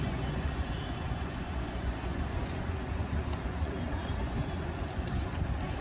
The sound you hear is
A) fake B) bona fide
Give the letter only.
A